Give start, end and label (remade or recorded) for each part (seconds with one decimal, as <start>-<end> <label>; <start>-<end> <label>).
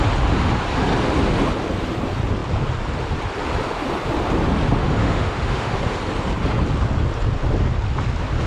0.0-4.8 recorded; 4.8-5.8 remade; 5.8-8.5 recorded